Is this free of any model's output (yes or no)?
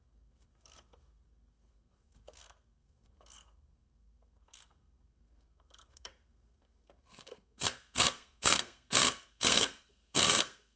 no